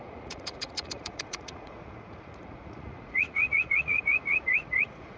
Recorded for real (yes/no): no